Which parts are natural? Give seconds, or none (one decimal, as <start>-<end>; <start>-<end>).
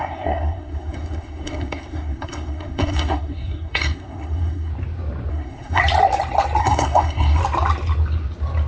4.7-5.3; 5.8-6.6; 7.4-8.7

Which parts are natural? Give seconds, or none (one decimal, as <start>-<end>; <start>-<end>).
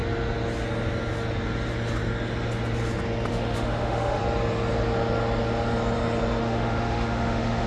0.0-3.3; 4.2-6.4